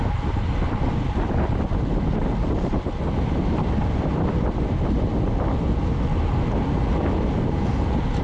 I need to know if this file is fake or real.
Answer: real